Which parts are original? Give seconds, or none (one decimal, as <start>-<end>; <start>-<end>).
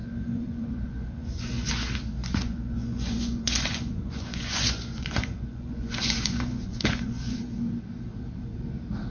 1.7-2.2; 7.4-9.1